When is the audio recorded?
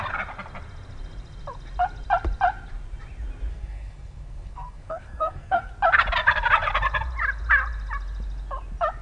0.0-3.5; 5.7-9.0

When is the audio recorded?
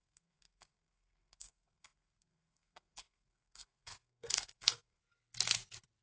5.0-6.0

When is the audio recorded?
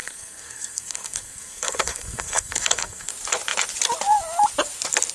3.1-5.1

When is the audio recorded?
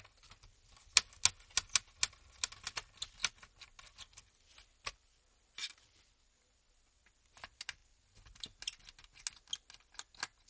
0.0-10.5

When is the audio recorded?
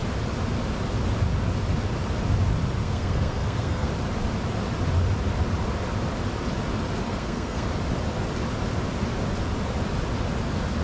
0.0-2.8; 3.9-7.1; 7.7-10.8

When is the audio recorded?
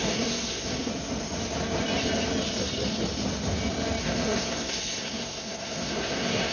0.9-4.0